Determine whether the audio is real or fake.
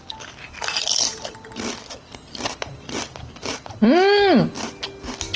real